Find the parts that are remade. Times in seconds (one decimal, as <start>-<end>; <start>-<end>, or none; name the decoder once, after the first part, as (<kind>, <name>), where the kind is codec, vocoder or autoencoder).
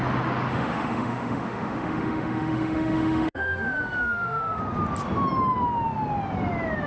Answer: 0.5-4.6 (autoencoder, DAC-VAE)